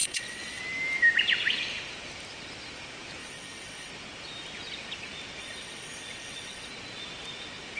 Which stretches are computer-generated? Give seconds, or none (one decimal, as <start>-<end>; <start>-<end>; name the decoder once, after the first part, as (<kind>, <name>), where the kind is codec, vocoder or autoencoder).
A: 0.0-0.6 (vocoder, WaveNeXt); 3.2-3.9; 5.4-6.7